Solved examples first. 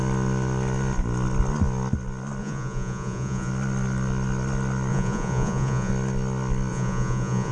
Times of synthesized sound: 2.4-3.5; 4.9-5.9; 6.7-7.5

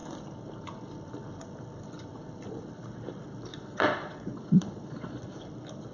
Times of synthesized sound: 3.5-5.3

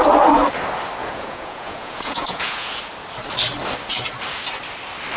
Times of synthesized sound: 1.0-2.8

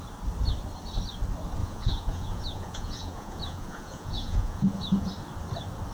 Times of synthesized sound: 1.6-5.1

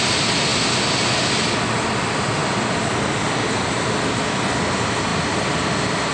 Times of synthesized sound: none

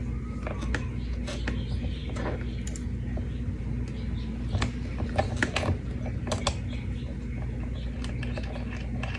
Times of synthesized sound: none

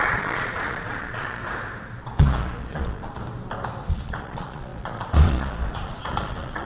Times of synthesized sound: 0.0-1.4; 2.0-3.2; 3.9-6.6